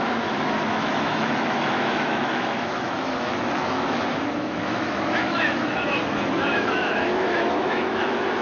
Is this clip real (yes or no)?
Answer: no